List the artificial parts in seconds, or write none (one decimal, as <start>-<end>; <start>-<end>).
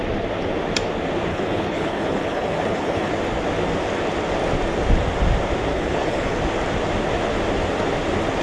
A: 1.3-3.1; 5.7-6.4